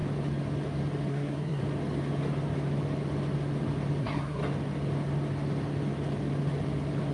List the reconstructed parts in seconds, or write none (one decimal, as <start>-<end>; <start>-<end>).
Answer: 1.1-1.6; 4.0-4.4